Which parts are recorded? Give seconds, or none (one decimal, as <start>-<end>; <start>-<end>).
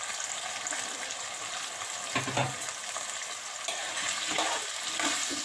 0.0-5.4